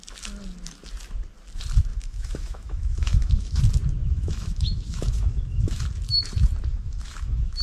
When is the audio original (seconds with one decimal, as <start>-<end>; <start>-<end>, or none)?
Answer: 0.0-1.9; 3.6-4.0; 5.9-6.7

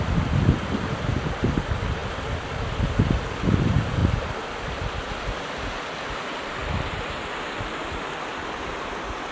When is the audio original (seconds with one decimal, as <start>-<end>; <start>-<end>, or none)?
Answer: 0.0-9.3

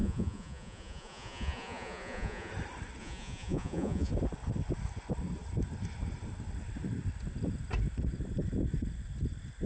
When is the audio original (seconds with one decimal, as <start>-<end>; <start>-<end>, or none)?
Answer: 2.5-3.0; 4.1-9.7

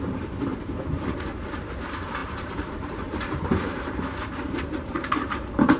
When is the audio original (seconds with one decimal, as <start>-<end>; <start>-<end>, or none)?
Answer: 0.5-1.0

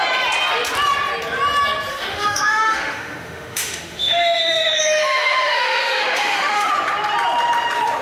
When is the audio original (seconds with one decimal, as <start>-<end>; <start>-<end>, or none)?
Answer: 0.0-1.9; 6.7-8.0

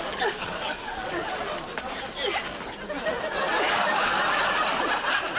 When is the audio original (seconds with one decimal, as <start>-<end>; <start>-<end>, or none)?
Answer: 1.2-3.6; 4.1-5.4